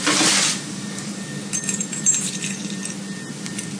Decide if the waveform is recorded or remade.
recorded